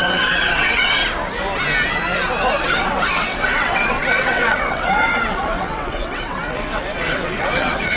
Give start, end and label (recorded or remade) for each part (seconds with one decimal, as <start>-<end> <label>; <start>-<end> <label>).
0.0-1.0 remade; 1.0-2.6 recorded; 2.6-8.0 remade